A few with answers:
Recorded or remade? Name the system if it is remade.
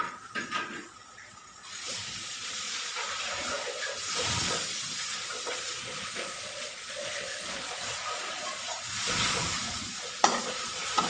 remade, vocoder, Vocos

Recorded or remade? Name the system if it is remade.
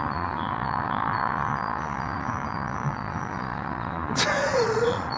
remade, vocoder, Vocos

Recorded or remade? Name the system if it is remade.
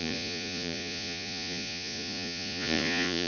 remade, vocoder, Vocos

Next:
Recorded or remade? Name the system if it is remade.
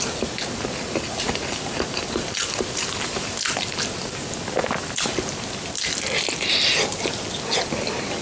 recorded